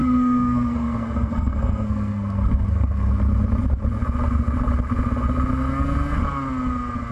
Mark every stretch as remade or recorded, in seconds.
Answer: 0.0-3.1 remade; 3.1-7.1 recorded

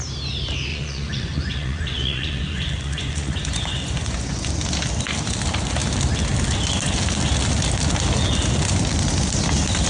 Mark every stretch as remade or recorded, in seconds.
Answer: 0.0-0.7 recorded; 0.7-4.5 remade; 4.5-9.9 recorded

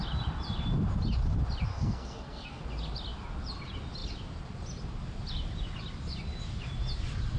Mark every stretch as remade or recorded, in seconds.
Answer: 0.0-1.7 recorded; 1.7-2.6 remade; 2.6-7.4 recorded

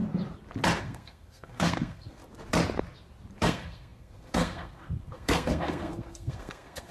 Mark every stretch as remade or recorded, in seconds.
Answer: 0.0-0.8 recorded; 0.8-2.2 remade; 2.2-3.4 recorded; 3.4-6.9 remade

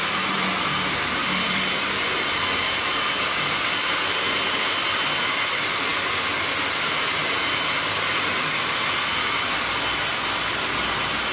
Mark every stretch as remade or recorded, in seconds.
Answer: 0.0-0.7 remade; 0.7-1.2 recorded; 1.2-4.3 remade; 4.3-11.3 recorded

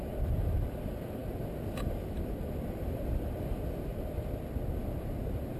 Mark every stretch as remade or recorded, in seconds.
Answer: 0.0-1.2 remade; 1.2-2.5 recorded; 2.5-3.9 remade; 3.9-4.8 recorded; 4.8-5.6 remade